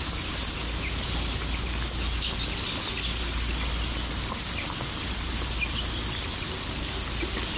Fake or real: real